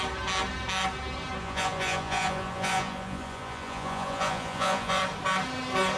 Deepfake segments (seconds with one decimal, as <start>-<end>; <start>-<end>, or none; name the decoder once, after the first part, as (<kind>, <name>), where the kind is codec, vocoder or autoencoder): 1.4-5.0 (vocoder, Vocos)